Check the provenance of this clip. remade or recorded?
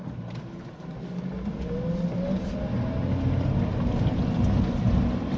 recorded